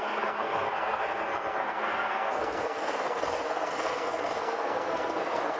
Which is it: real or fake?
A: fake